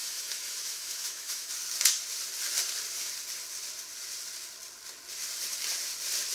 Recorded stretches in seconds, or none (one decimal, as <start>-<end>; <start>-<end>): 1.5-6.3